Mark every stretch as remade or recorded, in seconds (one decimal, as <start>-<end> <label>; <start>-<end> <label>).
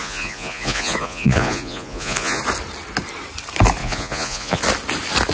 0.0-2.4 remade; 2.4-3.8 recorded; 3.8-4.6 remade; 4.6-5.3 recorded